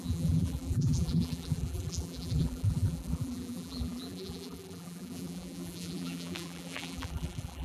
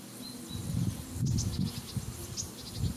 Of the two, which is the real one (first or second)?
second